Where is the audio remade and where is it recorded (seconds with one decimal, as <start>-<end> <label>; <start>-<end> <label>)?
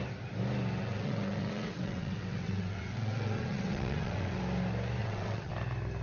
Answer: 0.0-0.8 recorded; 0.8-4.4 remade; 4.4-5.0 recorded; 5.0-5.5 remade; 5.5-6.0 recorded